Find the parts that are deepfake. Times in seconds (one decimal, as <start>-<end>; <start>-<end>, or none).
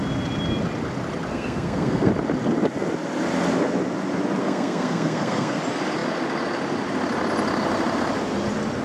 1.3-2.1; 4.4-5.6